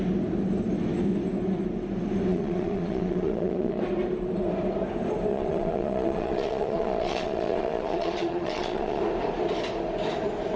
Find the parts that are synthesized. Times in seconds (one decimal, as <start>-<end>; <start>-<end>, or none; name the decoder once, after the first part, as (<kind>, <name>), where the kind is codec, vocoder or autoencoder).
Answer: 2.3-3.8 (vocoder, Vocos); 5.3-9.0